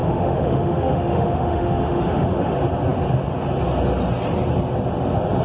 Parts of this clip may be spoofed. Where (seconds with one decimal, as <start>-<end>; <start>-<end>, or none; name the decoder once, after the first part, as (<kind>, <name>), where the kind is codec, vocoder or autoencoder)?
0.0-2.5 (autoencoder, DAC-VAE)